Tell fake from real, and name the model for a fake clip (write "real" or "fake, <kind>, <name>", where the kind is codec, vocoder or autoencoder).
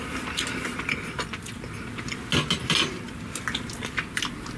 real